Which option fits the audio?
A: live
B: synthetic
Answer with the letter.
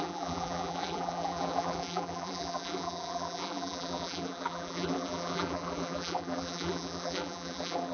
B